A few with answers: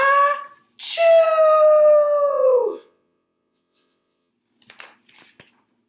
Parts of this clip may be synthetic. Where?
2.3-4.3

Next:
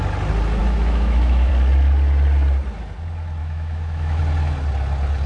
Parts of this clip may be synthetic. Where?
0.6-1.5; 3.4-4.2

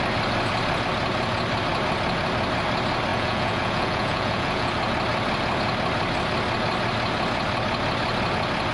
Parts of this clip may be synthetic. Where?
3.1-4.7